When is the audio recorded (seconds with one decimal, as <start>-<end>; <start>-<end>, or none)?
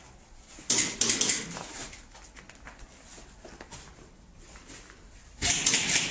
0.0-6.1